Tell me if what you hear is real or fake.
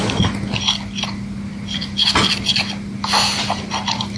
real